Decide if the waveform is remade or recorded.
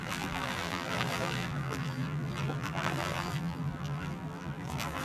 remade